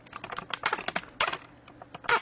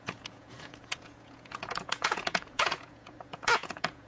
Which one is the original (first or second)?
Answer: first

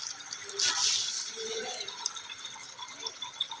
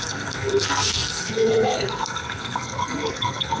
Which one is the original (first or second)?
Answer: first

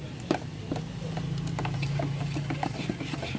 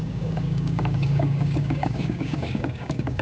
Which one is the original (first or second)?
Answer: first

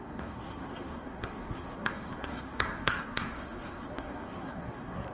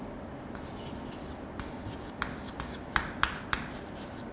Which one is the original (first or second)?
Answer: second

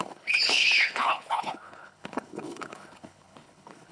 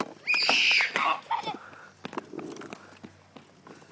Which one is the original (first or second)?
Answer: second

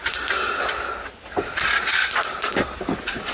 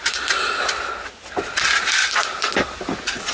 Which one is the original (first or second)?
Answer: second